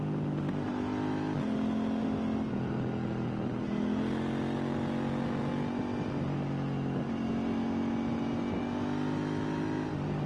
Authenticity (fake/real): real